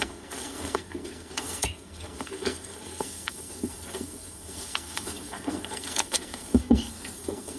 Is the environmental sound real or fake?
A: fake